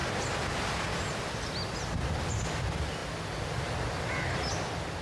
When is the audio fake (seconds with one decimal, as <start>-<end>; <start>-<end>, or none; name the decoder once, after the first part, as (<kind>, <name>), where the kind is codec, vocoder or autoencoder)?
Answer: none